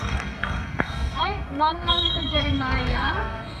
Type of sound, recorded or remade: remade